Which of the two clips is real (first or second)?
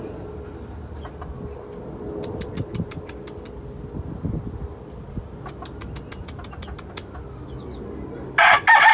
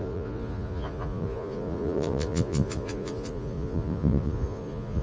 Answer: first